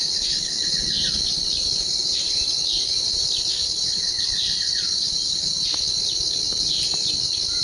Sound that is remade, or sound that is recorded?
recorded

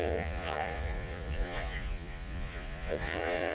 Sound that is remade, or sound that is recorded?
remade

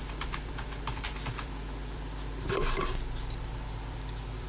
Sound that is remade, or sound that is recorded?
recorded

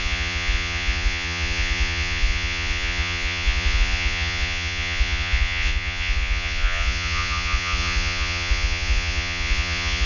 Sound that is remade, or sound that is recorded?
remade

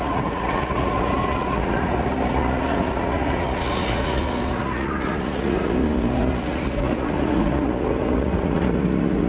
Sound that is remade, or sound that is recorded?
remade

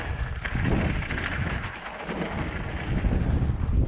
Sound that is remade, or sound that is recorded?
recorded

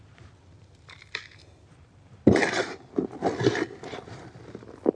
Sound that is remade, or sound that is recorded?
recorded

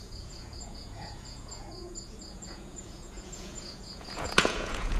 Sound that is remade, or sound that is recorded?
remade